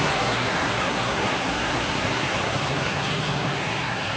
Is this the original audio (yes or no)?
no